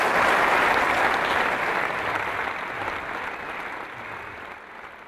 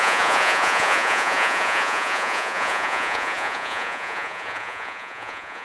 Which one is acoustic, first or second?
first